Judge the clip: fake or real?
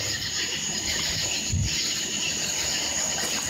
real